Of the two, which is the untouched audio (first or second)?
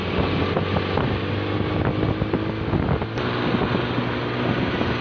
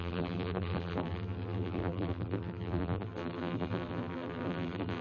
first